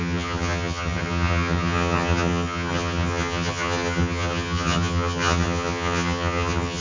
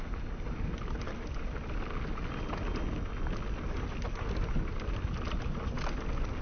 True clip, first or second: second